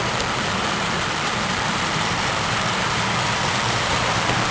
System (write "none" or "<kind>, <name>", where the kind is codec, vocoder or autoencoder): vocoder, BigVGAN v2